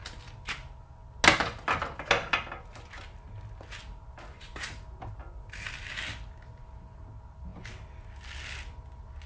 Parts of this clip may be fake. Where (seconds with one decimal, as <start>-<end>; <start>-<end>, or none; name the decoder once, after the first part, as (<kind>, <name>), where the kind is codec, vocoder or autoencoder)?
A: 5.2-5.9 (vocoder, BigVGAN v2)